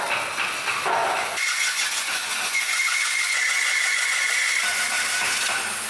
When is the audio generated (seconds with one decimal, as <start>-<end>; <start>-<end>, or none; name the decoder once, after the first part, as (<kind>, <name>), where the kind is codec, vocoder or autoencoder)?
1.0-4.5 (vocoder, Vocos)